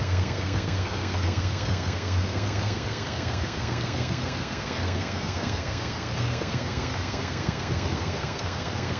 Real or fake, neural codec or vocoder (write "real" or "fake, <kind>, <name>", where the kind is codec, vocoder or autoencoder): fake, codec, SNAC